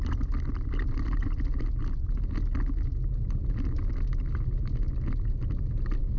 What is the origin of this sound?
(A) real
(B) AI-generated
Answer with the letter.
A